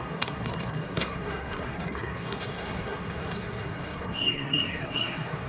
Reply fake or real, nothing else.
fake